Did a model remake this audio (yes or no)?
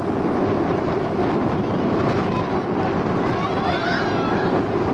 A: no